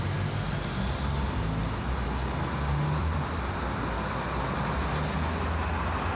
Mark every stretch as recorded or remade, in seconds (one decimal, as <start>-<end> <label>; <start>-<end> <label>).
0.0-3.0 recorded; 3.0-3.6 remade; 3.6-6.2 recorded